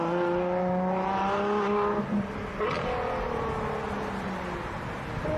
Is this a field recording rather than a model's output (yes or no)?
yes